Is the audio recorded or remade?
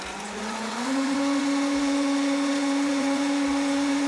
remade